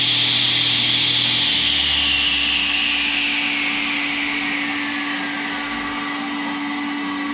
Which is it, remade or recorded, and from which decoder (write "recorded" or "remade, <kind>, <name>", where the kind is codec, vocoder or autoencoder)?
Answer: recorded